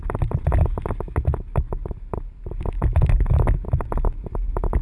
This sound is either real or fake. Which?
real